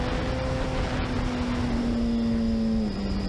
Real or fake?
real